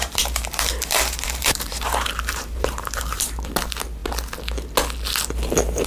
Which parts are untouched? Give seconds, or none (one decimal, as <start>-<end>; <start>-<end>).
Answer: 3.5-5.9